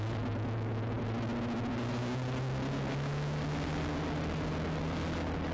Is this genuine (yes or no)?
yes